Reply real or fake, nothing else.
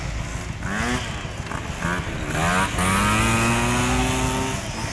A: real